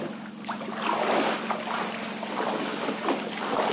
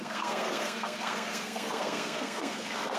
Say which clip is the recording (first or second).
first